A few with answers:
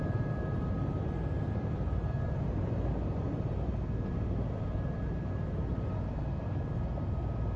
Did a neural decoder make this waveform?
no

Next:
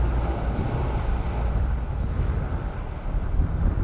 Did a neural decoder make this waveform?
no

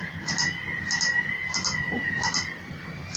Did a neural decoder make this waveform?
no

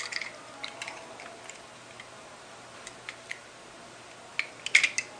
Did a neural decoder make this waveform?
no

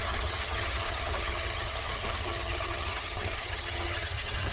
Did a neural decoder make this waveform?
yes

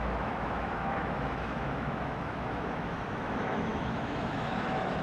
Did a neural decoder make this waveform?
yes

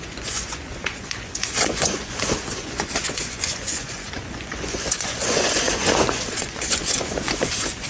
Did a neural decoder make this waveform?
yes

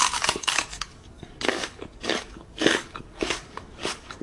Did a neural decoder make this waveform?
yes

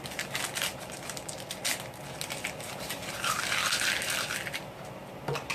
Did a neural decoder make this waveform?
no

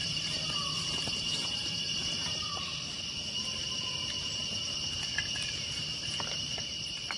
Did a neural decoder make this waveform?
yes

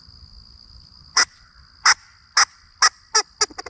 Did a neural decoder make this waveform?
no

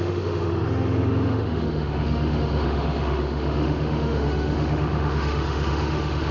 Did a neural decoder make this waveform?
yes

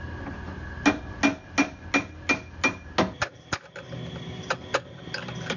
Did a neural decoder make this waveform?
no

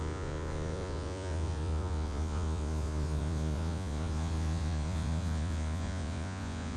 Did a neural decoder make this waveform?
yes